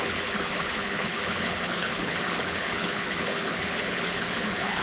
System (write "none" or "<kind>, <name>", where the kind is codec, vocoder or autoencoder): codec, HILCodec